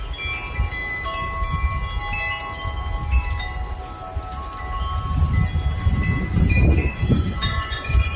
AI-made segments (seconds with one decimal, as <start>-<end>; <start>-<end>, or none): 6.8-8.2